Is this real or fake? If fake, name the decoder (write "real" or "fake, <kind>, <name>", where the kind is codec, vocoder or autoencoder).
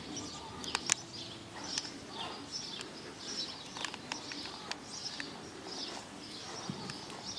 real